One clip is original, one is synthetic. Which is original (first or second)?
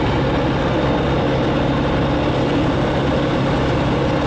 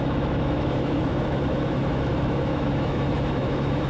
first